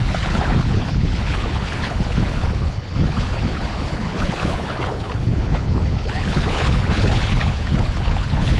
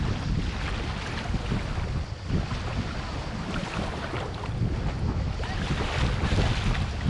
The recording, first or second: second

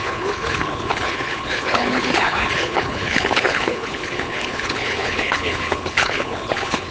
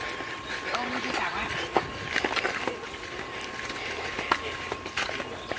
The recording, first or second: second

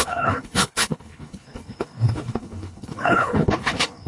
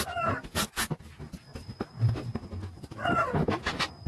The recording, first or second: second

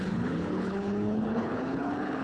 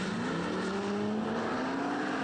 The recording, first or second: second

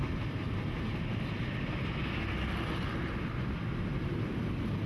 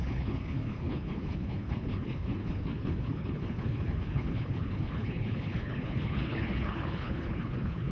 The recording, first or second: first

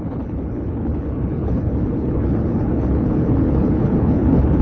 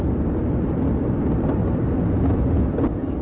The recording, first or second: second